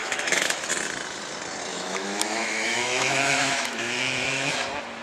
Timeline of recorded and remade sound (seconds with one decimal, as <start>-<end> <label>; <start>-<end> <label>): 0.0-0.7 remade; 0.7-1.7 recorded; 1.7-4.5 remade; 4.5-5.0 recorded

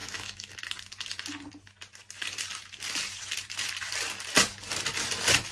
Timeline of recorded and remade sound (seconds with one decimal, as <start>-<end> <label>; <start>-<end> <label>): 0.0-0.6 remade; 0.6-5.5 recorded

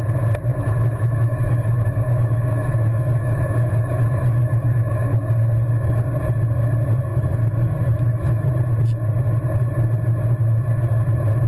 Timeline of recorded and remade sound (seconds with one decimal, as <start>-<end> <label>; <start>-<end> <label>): 0.0-0.5 recorded; 0.5-5.3 remade; 5.3-7.1 recorded; 7.1-8.5 remade; 8.5-11.5 recorded

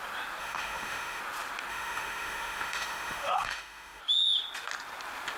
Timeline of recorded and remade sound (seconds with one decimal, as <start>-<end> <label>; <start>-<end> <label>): 0.0-0.4 recorded; 0.4-1.2 remade; 1.2-1.7 recorded; 1.7-4.0 remade; 4.0-5.4 recorded

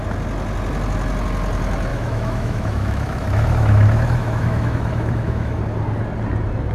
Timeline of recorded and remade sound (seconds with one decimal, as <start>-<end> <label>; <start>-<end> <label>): 0.0-1.9 recorded; 1.9-5.6 remade; 5.6-6.7 recorded

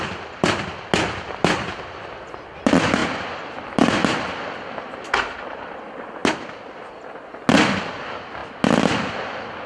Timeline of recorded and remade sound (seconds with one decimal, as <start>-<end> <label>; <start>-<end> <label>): 0.0-9.7 recorded

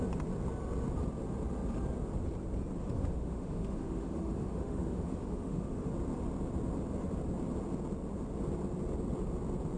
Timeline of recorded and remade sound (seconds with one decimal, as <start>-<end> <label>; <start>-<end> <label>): 0.0-2.8 recorded; 2.8-5.9 remade; 5.9-9.8 recorded

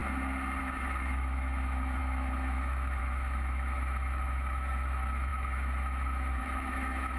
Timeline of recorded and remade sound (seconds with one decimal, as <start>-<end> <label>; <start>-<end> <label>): 0.0-0.6 recorded; 0.6-7.2 remade